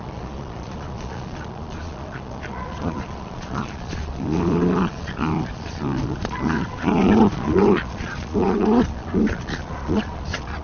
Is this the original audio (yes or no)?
no